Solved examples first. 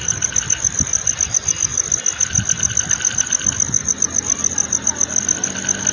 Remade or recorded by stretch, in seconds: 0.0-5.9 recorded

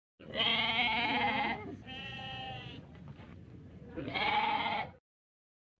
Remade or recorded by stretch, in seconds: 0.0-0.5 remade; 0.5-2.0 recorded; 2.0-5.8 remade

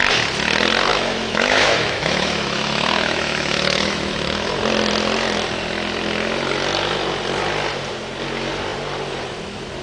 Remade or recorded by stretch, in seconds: 0.0-0.9 recorded; 0.9-4.5 remade; 4.5-9.8 recorded

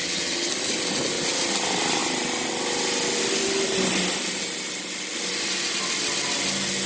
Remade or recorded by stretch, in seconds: 0.0-0.5 remade; 0.5-6.9 recorded

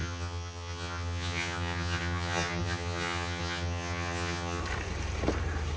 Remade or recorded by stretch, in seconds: 0.0-4.6 remade; 4.6-5.8 recorded

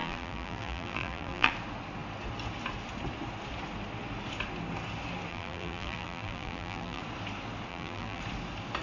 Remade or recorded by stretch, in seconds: 0.0-1.5 remade; 1.5-5.3 recorded; 5.3-7.0 remade; 7.0-7.7 recorded; 7.7-8.2 remade; 8.2-8.8 recorded

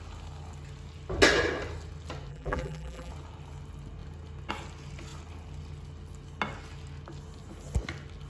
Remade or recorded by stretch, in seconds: 0.0-2.3 recorded; 2.3-3.1 remade; 3.1-8.3 recorded